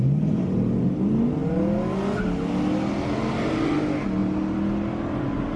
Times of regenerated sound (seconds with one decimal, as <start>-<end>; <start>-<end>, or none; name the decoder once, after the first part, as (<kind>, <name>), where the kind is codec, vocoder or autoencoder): none